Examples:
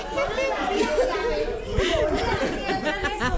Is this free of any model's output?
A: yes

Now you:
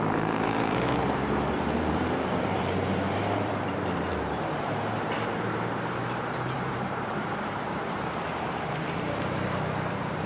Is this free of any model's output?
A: no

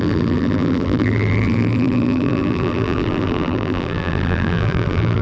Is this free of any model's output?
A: no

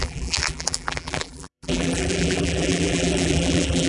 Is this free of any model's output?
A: no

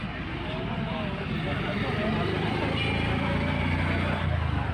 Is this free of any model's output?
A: yes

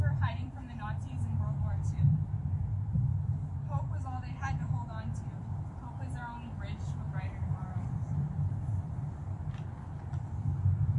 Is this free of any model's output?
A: no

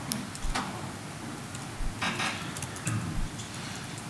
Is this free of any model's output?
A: yes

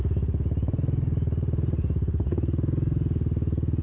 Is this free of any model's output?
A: no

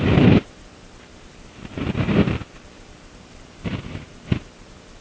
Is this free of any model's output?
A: no